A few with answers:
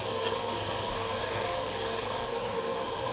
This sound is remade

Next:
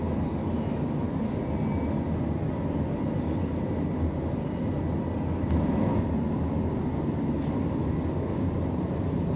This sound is recorded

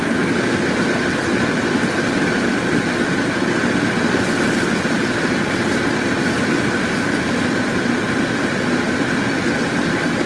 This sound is recorded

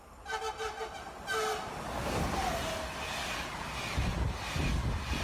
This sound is recorded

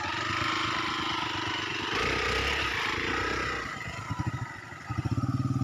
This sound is recorded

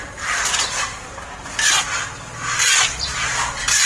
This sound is recorded